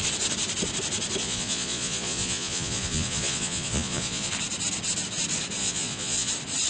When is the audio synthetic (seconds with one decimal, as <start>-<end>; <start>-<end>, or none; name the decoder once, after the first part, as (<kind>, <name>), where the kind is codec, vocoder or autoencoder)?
1.2-4.3 (vocoder, Vocos); 5.6-6.3